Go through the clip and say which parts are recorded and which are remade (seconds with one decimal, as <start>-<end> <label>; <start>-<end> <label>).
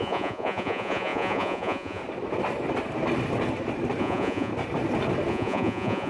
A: 0.0-2.0 remade; 2.0-4.0 recorded; 4.0-4.5 remade; 4.5-5.3 recorded; 5.3-6.1 remade